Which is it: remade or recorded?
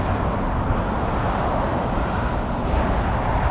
recorded